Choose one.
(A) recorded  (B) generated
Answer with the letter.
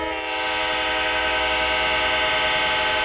A